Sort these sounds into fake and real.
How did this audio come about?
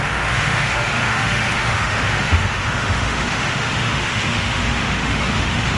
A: fake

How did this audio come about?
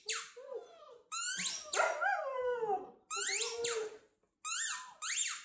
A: real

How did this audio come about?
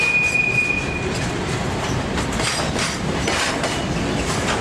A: real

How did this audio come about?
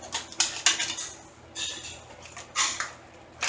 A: real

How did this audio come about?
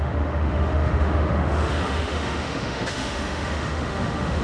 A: fake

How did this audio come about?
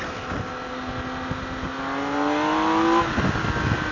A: real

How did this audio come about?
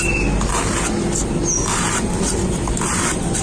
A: real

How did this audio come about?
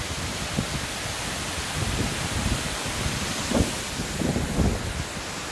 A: real